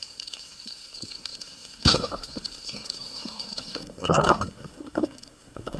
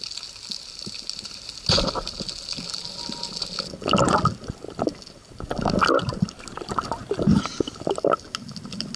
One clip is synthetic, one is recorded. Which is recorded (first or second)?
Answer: second